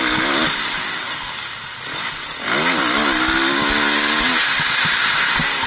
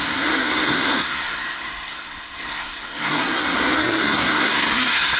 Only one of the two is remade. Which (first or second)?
second